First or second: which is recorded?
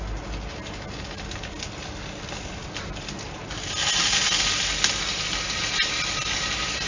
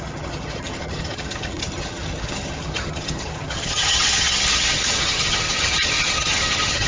first